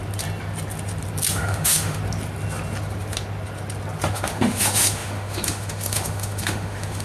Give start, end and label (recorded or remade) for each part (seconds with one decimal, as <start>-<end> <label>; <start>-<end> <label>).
0.0-1.3 recorded; 1.3-2.0 remade; 2.0-4.1 recorded; 4.1-7.0 remade